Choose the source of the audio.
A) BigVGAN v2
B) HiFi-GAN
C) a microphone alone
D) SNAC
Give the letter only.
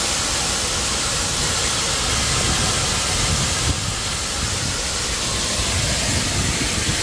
C